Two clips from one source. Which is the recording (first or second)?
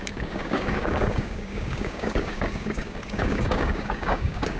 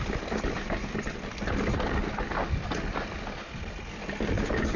second